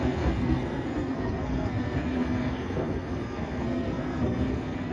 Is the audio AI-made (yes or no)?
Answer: yes